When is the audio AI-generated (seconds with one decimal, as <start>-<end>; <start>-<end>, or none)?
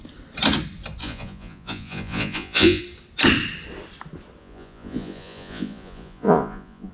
1.0-2.8; 4.4-6.9